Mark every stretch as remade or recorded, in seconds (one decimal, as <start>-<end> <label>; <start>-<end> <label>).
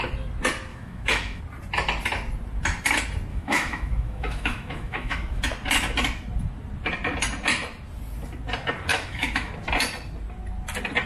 0.0-0.7 recorded; 0.7-1.4 remade; 1.4-3.3 recorded; 3.3-5.4 remade; 5.4-8.9 recorded; 8.9-9.5 remade; 9.5-11.1 recorded